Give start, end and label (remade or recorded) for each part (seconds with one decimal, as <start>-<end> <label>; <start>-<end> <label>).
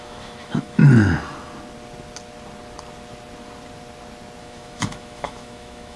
0.0-0.8 remade; 0.8-4.4 recorded; 4.4-6.0 remade